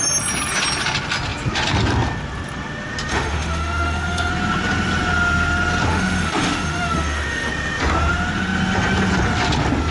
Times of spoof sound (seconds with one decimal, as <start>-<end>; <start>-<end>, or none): 3.1-4.3; 5.9-7.5